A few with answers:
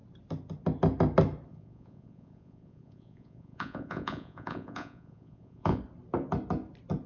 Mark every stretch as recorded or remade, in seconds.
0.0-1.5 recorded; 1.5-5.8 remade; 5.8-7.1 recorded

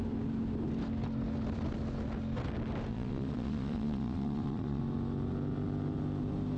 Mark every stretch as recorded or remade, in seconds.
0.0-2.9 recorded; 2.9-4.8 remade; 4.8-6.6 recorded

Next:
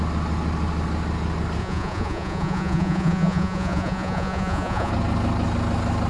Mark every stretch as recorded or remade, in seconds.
0.0-1.6 recorded; 1.6-4.9 remade; 4.9-6.1 recorded

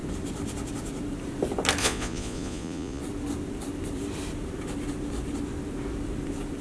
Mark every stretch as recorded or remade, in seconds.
0.0-1.8 recorded; 1.8-3.0 remade; 3.0-6.6 recorded